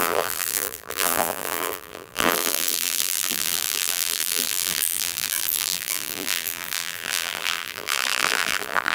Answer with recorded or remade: remade